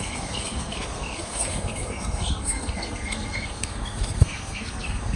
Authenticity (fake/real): fake